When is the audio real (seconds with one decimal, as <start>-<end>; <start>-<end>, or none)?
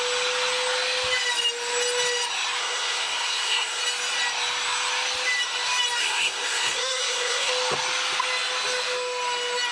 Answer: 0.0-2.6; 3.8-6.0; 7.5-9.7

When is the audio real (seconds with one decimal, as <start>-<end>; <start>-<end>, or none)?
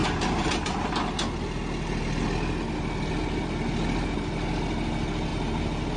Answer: 0.0-6.0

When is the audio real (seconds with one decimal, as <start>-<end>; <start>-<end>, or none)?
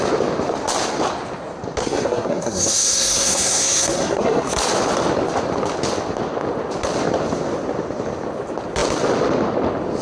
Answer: 0.0-1.8; 4.5-10.0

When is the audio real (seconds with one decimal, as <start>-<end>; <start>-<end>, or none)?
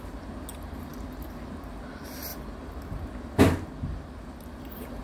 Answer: 0.0-5.0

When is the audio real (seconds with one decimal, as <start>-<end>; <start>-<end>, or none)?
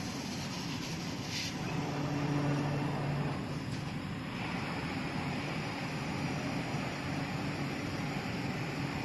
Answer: 0.0-9.0